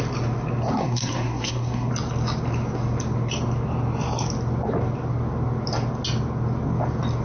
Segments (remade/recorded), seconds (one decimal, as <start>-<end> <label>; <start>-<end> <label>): 0.0-0.8 recorded; 0.8-1.9 remade; 1.9-7.2 recorded

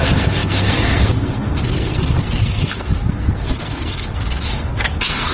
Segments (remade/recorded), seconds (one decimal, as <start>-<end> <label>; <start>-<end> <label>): 0.0-5.3 remade

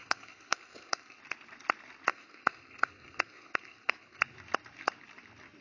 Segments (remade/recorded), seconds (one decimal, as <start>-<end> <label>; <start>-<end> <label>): 0.0-1.2 remade; 1.2-2.1 recorded; 2.1-4.2 remade; 4.2-5.6 recorded

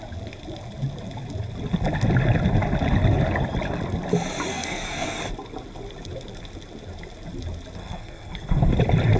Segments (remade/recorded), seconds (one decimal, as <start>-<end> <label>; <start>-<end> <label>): 0.0-4.5 recorded; 4.5-5.3 remade; 5.3-7.8 recorded; 7.8-8.7 remade; 8.7-9.2 recorded

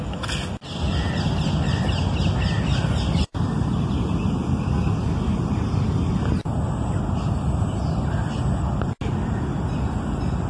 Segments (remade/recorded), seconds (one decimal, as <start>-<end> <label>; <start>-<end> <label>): 0.0-10.5 recorded

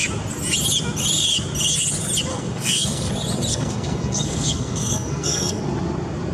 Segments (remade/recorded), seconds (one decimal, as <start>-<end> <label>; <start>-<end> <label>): 0.0-2.3 recorded; 2.3-3.1 remade; 3.1-3.5 recorded; 3.5-5.6 remade; 5.6-6.3 recorded

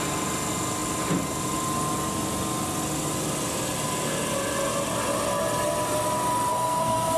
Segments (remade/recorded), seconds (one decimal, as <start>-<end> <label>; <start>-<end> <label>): 0.0-6.5 recorded; 6.5-7.2 remade